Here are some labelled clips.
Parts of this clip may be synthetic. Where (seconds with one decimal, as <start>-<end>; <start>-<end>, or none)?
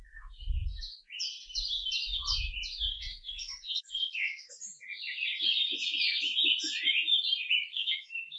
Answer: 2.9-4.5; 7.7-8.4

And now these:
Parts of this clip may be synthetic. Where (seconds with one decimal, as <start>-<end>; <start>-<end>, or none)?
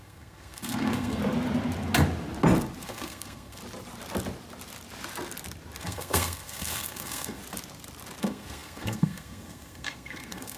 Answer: 0.0-1.2; 2.8-3.6; 5.8-7.4; 8.2-10.6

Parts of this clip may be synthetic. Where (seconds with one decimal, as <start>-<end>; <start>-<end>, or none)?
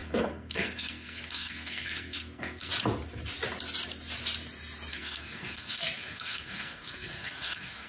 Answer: 0.0-2.7; 4.9-7.9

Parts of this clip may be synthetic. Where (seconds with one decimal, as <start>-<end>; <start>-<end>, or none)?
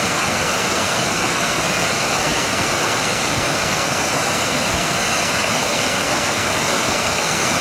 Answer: 0.0-7.6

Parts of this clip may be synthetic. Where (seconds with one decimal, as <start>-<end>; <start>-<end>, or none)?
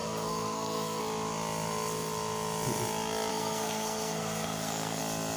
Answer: 0.0-1.0; 3.3-5.0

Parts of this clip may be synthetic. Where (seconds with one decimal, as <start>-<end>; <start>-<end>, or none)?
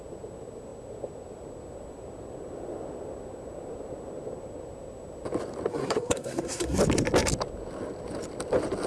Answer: 5.7-6.8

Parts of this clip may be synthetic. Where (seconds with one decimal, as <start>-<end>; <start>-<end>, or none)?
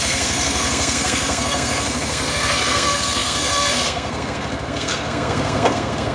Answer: 0.0-6.1